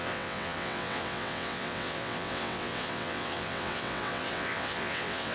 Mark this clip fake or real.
fake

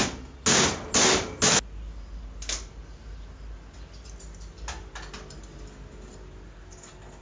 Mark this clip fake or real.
real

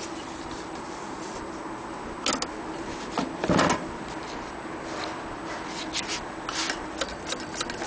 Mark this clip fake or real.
real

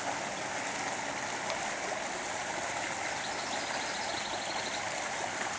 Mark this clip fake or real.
real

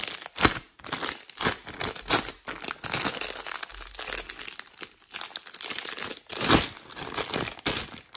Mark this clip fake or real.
real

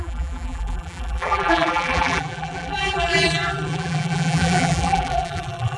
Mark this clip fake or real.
fake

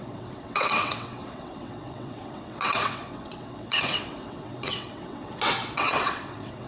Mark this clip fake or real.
fake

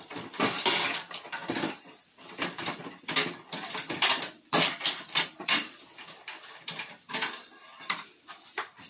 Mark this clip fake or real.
fake